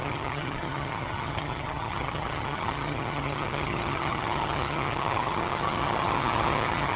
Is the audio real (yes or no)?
no